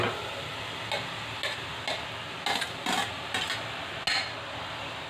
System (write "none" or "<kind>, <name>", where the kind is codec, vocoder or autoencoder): none